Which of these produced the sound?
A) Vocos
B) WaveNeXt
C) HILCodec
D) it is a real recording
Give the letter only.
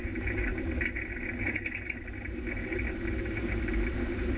D